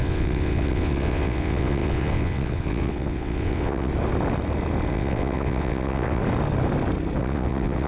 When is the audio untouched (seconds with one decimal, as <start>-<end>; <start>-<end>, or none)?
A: 3.9-4.9; 6.2-7.2